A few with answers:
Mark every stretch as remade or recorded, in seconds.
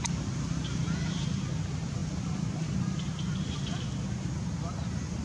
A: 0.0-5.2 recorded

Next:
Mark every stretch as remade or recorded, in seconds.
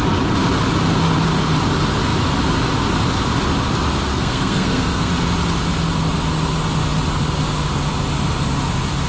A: 0.0-4.1 recorded; 4.1-5.1 remade; 5.1-9.1 recorded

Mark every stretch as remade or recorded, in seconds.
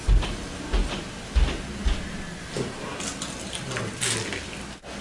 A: 0.0-5.0 recorded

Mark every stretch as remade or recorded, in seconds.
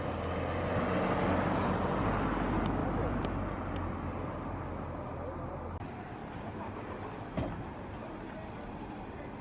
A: 0.0-2.8 recorded; 2.8-3.3 remade; 3.3-6.2 recorded; 6.2-9.4 remade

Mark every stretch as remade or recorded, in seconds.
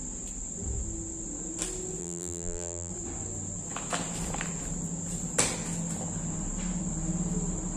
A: 0.0-2.0 recorded; 2.0-2.9 remade; 2.9-7.8 recorded